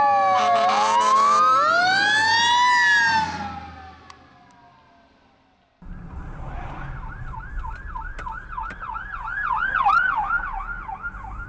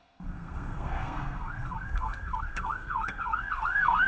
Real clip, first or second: first